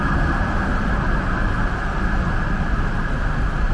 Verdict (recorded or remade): recorded